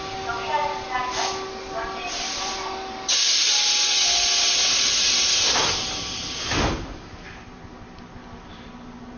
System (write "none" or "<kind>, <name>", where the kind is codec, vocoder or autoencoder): none